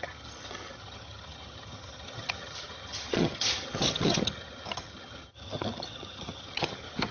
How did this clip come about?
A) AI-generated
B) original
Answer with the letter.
A